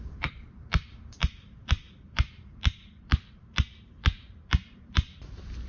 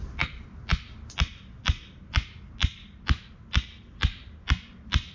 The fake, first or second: first